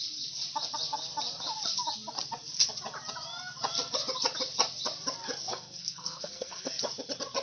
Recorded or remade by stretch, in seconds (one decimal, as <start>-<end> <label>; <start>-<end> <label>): 0.0-5.5 recorded; 5.5-6.7 remade; 6.7-7.4 recorded